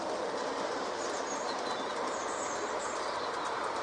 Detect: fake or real real